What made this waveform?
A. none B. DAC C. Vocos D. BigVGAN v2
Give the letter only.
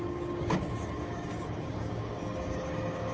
B